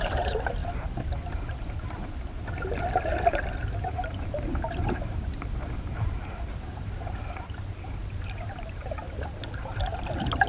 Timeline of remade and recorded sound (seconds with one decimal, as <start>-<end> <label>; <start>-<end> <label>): 0.0-0.6 remade; 0.6-2.9 recorded; 2.9-9.4 remade; 9.4-10.1 recorded; 10.1-10.5 remade